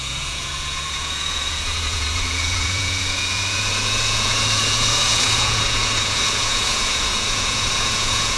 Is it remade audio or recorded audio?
remade